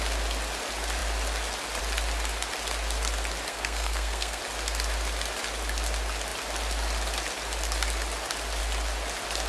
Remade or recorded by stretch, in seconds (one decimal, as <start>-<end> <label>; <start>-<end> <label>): 0.0-3.5 recorded; 3.5-4.4 remade; 4.4-9.5 recorded